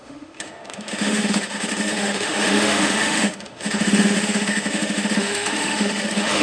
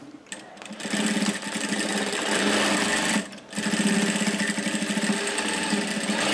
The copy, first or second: first